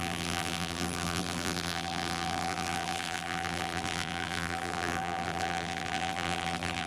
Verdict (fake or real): fake